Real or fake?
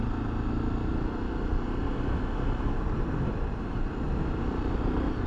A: real